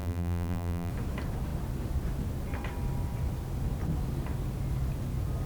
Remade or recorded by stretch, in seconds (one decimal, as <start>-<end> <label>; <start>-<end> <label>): 0.0-0.9 remade; 0.9-5.5 recorded